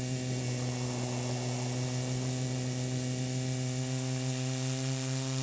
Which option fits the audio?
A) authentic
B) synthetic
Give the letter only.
A